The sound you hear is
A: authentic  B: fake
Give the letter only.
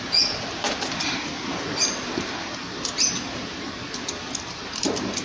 A